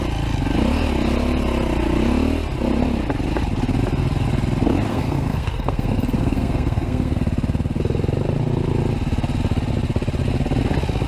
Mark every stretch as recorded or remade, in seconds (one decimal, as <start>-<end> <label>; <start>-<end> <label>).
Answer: 0.0-4.9 recorded; 4.9-7.2 remade; 7.2-11.1 recorded